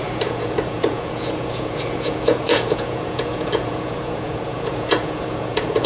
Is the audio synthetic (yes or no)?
yes